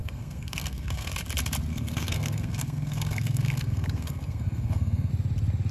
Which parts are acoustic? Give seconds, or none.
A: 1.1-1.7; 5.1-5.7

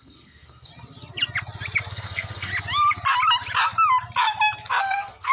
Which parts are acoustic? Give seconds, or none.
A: 0.7-1.9; 2.5-4.8

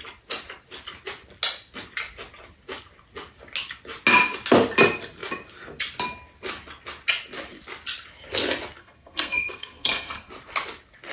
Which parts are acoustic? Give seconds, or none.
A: 0.0-8.8; 10.3-11.1

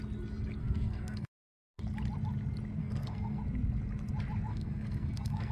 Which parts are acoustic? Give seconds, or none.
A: 0.0-0.6; 1.8-2.8; 3.4-4.5

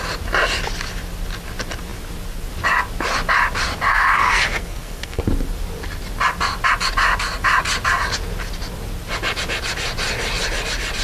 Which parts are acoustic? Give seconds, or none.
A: 0.0-3.9; 5.2-11.0

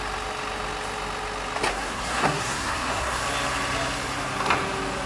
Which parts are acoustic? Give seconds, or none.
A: 0.0-1.7; 3.2-5.1

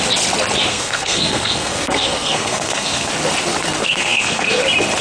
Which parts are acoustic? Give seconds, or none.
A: 0.0-0.7; 3.1-3.8; 4.6-5.0